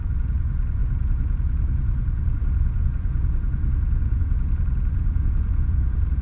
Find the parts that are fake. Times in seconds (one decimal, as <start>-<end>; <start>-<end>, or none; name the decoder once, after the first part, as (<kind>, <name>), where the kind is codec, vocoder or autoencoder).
0.0-6.2 (vocoder, Vocos)